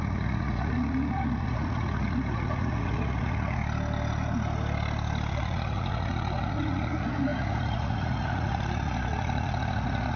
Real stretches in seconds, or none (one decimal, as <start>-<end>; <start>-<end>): 3.6-5.3